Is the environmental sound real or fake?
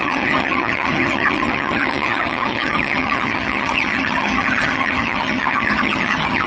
fake